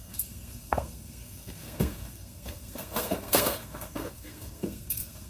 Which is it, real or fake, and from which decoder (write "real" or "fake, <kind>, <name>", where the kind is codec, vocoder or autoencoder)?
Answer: fake, codec, SNAC